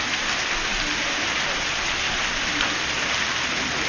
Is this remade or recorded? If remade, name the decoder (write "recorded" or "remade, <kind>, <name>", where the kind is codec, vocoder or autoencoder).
recorded